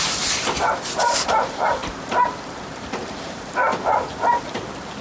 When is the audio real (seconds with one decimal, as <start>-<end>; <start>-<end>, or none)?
4.1-5.0